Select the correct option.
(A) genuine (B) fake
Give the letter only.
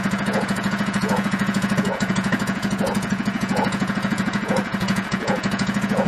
B